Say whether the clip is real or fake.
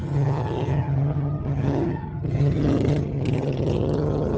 fake